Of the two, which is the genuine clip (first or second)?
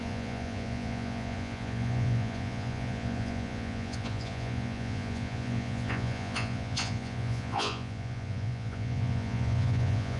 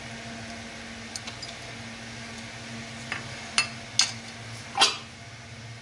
second